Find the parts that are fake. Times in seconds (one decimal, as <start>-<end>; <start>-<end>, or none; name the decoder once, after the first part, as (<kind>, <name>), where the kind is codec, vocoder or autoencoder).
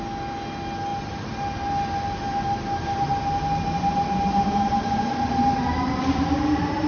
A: none